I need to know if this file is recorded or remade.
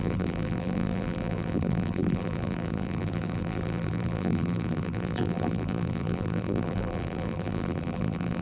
remade